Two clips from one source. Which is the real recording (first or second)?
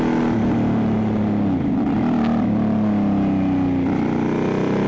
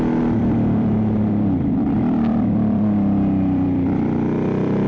first